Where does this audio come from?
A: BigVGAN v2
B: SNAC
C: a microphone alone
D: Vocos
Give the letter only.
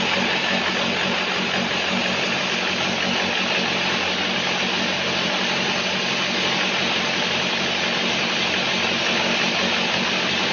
C